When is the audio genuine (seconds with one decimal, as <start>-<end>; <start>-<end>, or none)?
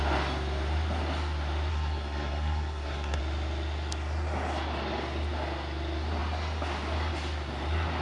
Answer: 0.0-1.7; 3.2-8.0